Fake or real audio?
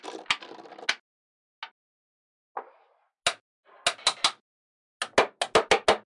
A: real